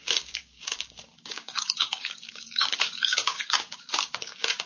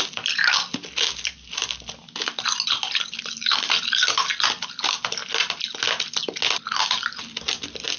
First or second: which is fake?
first